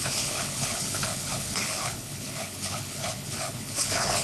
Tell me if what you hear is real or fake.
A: fake